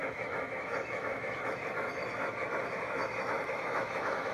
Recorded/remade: remade